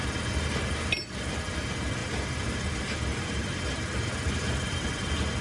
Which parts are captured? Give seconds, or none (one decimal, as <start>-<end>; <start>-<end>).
0.0-5.4

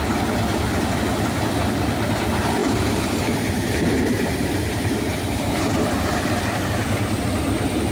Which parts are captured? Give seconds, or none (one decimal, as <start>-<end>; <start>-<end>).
0.0-2.6; 5.7-7.9

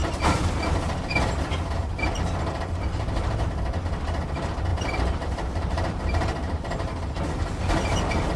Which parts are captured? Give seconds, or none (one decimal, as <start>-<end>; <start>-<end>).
0.6-4.7; 6.9-8.4

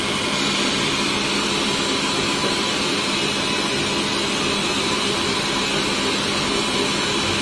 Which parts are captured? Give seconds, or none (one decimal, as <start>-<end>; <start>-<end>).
0.0-2.4; 3.3-4.6; 5.6-7.4

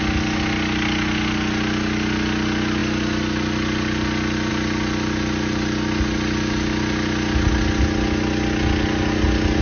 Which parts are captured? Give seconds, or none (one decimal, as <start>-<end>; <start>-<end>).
0.0-9.6

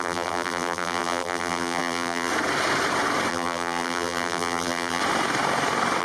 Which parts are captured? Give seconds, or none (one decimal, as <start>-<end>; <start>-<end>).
2.3-3.3; 5.0-6.0

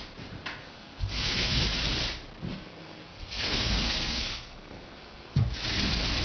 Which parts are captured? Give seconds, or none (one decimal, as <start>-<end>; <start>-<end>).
0.0-0.6; 1.6-2.5; 5.4-6.2